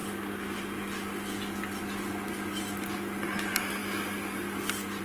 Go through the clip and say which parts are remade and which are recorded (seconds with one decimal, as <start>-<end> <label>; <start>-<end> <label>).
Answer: 0.0-5.0 recorded